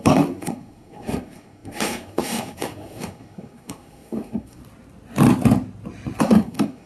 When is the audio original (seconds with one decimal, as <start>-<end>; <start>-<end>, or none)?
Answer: 4.6-6.2